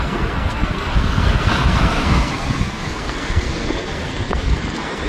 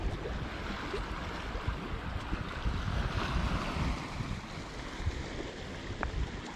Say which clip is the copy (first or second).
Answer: first